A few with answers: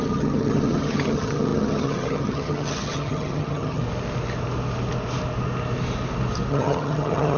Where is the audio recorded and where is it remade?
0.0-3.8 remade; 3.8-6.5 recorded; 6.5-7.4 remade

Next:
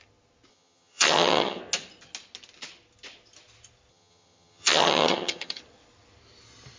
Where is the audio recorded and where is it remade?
0.0-0.5 recorded; 0.5-1.6 remade; 1.6-3.9 recorded; 3.9-5.6 remade; 5.6-6.8 recorded